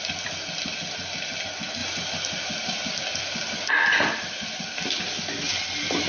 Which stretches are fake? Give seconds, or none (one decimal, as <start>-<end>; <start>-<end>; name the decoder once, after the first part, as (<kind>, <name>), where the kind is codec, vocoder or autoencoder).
none

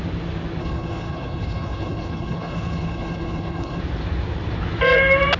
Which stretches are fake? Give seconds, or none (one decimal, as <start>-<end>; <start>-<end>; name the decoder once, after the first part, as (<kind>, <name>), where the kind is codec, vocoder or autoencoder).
0.6-3.8 (codec, HILCodec)

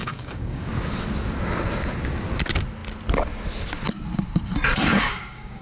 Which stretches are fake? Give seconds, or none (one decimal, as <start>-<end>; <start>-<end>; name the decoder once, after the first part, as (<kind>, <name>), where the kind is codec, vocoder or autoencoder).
0.0-0.7 (codec, DAC); 4.9-5.6

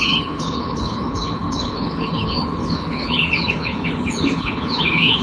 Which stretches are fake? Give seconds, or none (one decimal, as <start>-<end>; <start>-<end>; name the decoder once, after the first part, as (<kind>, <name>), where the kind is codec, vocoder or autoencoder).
0.0-5.2 (codec, HILCodec)

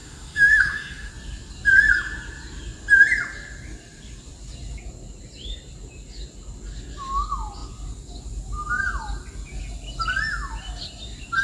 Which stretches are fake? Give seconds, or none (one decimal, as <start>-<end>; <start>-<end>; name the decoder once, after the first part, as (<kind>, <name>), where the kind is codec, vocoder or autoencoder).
0.0-1.1 (autoencoder, DAC-VAE)